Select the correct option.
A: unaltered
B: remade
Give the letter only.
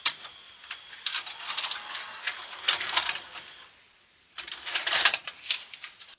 B